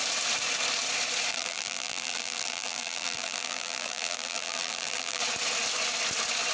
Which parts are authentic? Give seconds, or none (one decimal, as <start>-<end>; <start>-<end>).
0.0-1.3; 5.2-6.5